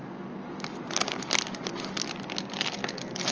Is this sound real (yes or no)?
yes